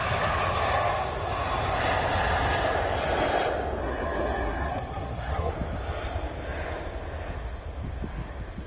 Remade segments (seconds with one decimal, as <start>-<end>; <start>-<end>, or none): 3.8-5.5